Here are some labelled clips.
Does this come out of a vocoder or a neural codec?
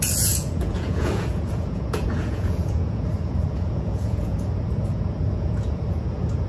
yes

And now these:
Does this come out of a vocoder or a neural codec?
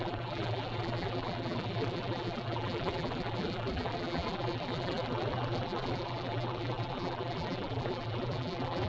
yes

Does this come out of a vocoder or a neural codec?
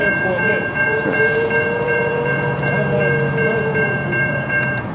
yes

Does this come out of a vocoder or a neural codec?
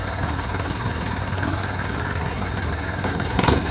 yes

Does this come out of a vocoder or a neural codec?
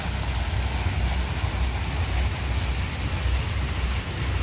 no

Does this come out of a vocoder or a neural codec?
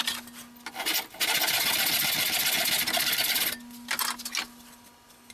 no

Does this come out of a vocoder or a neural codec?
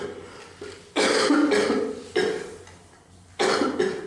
no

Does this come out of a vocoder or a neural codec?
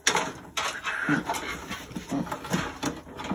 no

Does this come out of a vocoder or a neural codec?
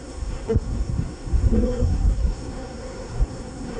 yes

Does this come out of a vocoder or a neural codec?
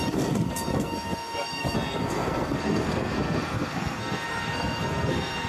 yes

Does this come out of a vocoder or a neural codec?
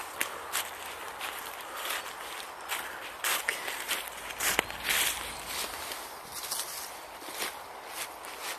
no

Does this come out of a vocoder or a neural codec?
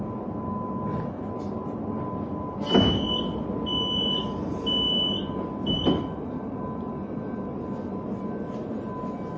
no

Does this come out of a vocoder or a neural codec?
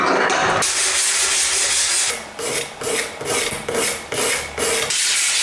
no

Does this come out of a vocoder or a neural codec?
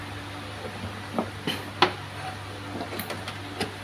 no